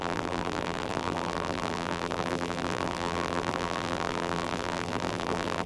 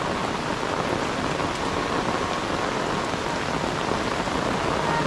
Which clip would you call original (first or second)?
second